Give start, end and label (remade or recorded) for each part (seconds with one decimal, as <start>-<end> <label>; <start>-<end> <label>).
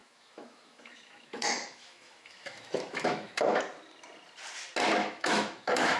0.0-3.6 remade; 3.6-5.0 recorded; 5.0-6.0 remade